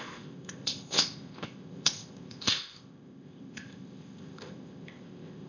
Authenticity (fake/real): fake